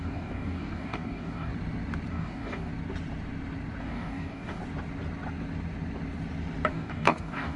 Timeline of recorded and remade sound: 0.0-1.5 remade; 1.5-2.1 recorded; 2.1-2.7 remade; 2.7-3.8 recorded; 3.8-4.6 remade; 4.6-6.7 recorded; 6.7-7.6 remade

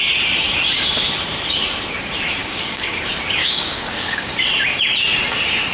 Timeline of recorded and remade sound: 0.0-2.4 recorded; 2.4-2.9 remade; 2.9-3.4 recorded; 3.4-4.3 remade; 4.3-5.7 recorded

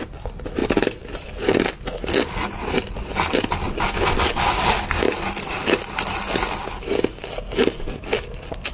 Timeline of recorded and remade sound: 0.0-8.7 recorded

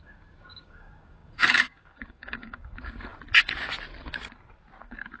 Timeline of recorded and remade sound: 0.0-3.1 remade; 3.1-4.8 recorded; 4.8-5.2 remade

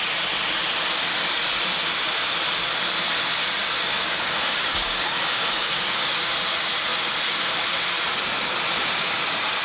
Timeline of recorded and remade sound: 0.0-3.9 recorded; 3.9-6.3 remade; 6.3-9.6 recorded